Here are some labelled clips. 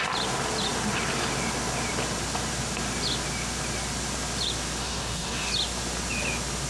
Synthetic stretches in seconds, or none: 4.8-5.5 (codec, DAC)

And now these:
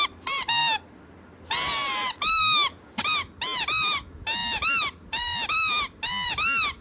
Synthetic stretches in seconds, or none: none